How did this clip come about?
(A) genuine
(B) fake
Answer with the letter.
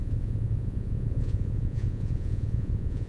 B